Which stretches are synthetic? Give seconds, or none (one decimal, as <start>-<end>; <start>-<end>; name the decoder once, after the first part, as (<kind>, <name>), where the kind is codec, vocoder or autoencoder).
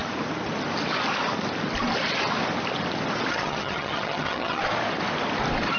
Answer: 3.3-4.6 (vocoder, HiFi-GAN)